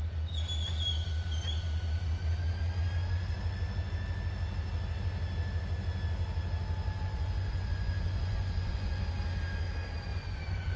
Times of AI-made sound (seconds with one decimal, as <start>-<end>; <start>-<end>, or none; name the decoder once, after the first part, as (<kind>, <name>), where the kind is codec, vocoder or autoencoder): 6.8-9.0 (vocoder, Vocos); 10.1-10.8